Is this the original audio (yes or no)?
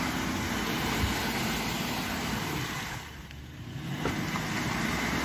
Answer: yes